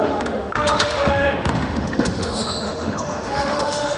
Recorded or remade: remade